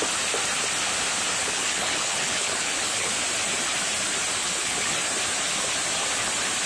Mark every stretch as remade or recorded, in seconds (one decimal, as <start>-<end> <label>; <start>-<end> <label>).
0.0-1.4 recorded; 1.4-3.1 remade; 3.1-4.4 recorded; 4.4-5.0 remade; 5.0-6.7 recorded